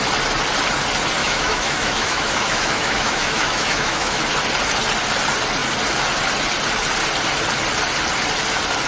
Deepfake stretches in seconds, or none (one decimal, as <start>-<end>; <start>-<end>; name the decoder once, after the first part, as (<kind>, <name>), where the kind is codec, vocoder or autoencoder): 1.2-4.2 (autoencoder, DAC-VAE)